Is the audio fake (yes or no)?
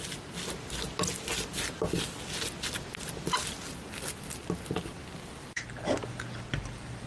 no